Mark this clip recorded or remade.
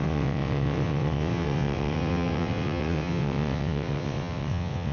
remade